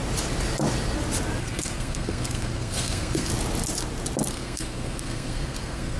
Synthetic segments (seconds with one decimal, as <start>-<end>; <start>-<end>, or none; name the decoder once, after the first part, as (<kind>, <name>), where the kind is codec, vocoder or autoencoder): 1.4-3.3 (codec, SNAC); 4.3-6.0